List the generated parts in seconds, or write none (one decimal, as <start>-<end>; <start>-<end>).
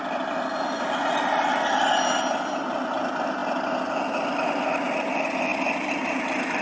none